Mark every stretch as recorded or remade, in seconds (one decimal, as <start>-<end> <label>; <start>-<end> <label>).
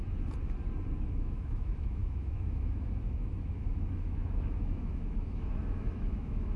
0.0-1.1 recorded; 1.1-6.6 remade